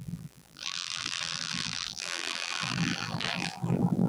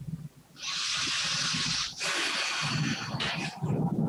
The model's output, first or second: first